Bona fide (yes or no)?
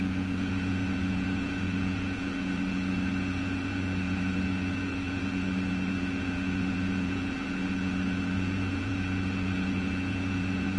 no